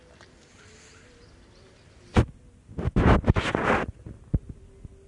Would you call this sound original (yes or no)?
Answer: yes